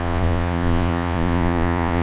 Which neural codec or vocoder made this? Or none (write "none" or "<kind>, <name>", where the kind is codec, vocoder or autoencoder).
vocoder, Vocos